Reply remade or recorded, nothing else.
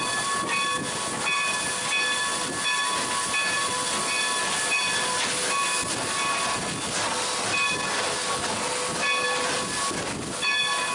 recorded